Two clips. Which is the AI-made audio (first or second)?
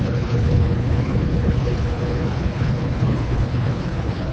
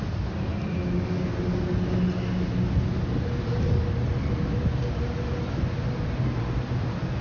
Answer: first